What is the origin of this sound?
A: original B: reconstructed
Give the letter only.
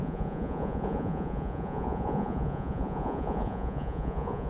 B